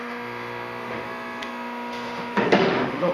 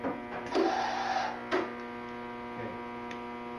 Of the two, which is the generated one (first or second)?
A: first